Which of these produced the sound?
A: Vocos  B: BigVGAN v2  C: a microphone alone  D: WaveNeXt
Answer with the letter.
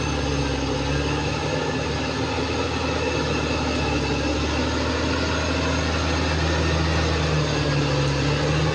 C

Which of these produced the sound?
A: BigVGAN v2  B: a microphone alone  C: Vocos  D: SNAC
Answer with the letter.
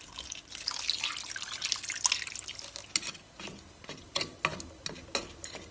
B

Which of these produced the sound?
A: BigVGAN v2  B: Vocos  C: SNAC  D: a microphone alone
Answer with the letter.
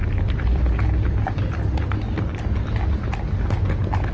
D